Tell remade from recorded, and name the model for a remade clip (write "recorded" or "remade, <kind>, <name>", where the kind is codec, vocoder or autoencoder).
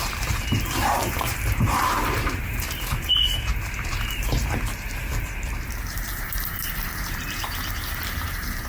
remade, vocoder, BigVGAN v2